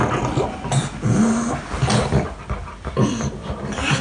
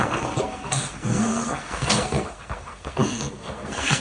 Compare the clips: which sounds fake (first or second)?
second